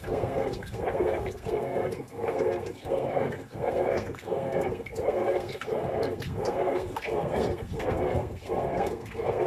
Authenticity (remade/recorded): remade